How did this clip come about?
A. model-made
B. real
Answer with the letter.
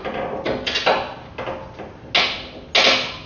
B